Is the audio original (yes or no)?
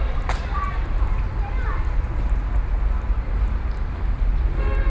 yes